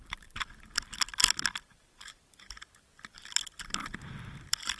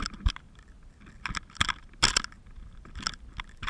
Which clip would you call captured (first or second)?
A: second